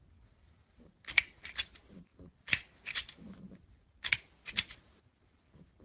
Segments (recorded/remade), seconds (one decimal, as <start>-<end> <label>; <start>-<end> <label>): 0.0-5.8 recorded